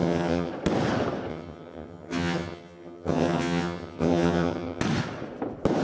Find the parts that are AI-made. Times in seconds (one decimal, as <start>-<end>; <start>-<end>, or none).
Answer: 0.0-0.5; 1.3-4.8

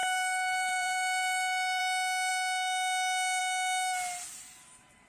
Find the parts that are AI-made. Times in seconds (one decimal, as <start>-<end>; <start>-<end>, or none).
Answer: 0.0-1.8

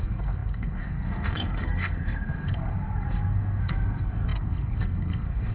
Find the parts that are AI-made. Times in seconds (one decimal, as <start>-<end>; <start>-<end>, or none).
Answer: 0.0-5.5